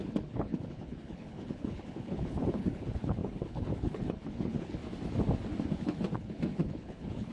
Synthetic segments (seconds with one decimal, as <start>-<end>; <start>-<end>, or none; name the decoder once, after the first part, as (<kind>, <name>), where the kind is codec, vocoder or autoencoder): 0.0-4.8 (codec, HILCodec); 5.7-7.3

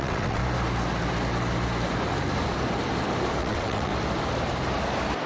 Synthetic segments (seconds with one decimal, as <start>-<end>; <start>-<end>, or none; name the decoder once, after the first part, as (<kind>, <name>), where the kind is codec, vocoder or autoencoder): 0.0-0.4 (vocoder, WaveNeXt); 3.4-3.9